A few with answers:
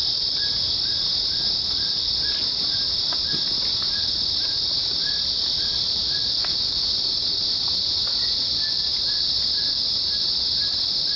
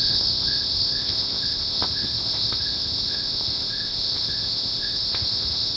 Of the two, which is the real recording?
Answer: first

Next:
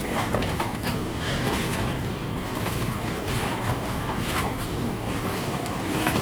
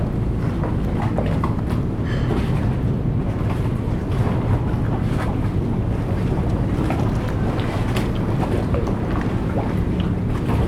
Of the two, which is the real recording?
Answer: second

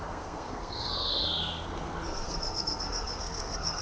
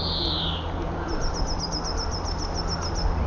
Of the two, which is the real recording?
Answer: second